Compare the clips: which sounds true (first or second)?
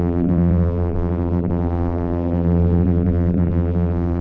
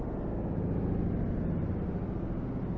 second